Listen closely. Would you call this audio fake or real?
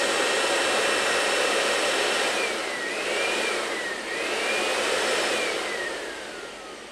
fake